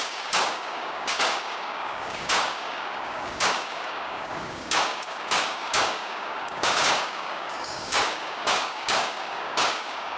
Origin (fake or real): fake